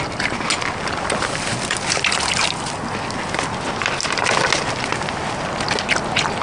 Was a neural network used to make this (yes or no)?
no